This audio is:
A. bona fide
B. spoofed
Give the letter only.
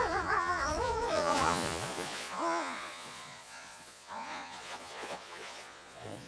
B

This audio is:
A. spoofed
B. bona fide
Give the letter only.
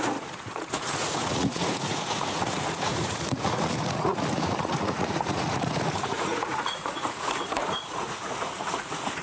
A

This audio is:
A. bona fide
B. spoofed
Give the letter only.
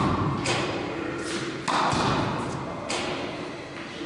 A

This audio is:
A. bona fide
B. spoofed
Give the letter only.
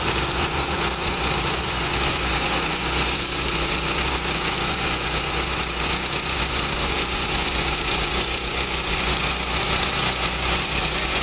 B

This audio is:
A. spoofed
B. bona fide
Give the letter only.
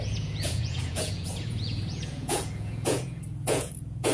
A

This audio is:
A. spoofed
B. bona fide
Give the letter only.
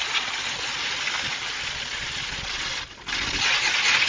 B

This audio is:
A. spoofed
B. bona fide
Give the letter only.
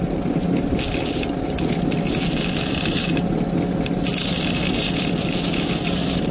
B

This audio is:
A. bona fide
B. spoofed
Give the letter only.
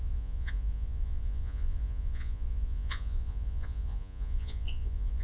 B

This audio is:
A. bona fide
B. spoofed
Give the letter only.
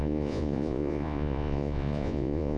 B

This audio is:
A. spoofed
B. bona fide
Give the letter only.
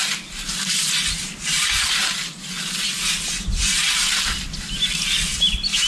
B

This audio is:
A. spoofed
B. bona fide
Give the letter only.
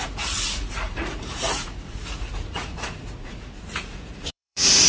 A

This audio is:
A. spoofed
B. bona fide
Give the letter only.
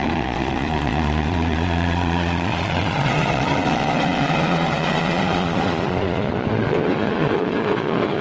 A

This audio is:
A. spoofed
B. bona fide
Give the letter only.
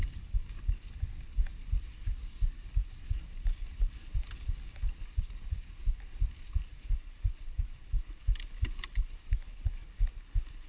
B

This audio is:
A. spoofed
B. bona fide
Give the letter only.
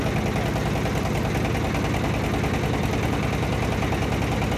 B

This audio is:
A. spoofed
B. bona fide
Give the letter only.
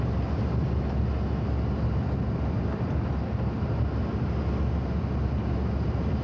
B